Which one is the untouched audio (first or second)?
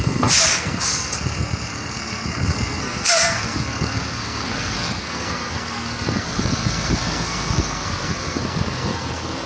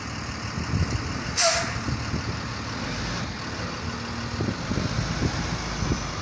second